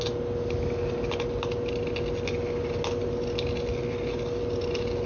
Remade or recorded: recorded